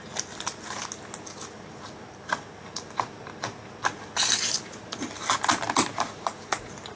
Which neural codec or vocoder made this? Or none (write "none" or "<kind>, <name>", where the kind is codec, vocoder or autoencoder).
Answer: none